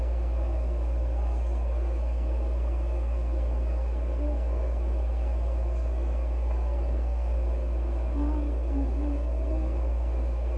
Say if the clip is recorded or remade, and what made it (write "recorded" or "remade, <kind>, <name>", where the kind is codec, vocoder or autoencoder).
remade, codec, SNAC